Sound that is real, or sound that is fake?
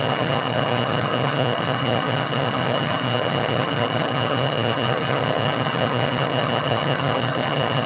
fake